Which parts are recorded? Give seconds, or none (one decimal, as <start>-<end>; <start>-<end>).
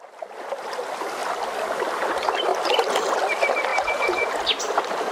0.0-3.7; 4.3-5.1